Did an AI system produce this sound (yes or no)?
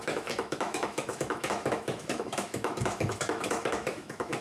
yes